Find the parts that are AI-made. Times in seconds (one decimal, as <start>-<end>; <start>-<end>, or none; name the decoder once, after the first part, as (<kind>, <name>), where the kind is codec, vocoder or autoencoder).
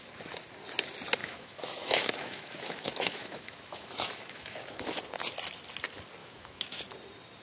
1.2-5.0 (autoencoder, DAC-VAE); 6.2-6.8